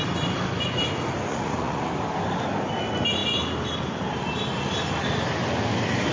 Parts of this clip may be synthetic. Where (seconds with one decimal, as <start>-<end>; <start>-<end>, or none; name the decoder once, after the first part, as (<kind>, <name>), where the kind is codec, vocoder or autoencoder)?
1.3-1.9 (vocoder, Vocos)